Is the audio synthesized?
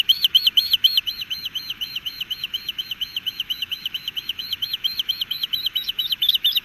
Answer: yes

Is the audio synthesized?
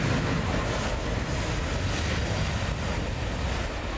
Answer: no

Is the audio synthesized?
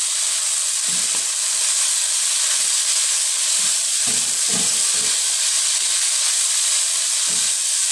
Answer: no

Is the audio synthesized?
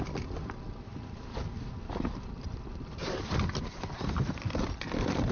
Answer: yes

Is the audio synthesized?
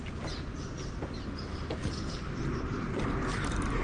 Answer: no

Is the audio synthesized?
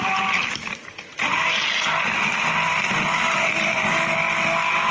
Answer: no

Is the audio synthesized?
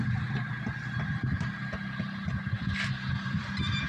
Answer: yes